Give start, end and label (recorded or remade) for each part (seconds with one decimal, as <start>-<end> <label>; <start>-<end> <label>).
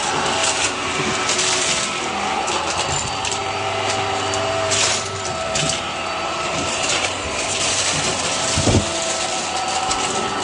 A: 0.0-0.4 recorded; 0.4-1.2 remade; 1.2-3.4 recorded; 3.4-7.7 remade; 7.7-10.4 recorded